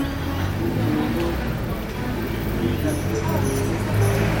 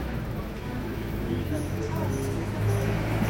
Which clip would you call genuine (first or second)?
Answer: first